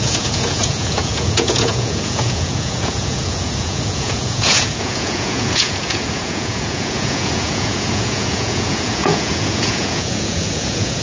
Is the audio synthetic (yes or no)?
yes